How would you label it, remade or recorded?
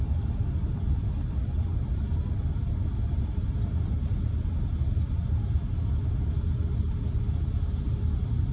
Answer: recorded